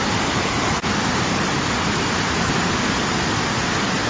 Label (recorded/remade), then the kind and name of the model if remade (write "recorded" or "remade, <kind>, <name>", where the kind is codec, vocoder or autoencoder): recorded